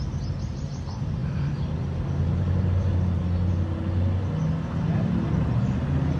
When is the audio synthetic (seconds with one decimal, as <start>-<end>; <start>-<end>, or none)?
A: none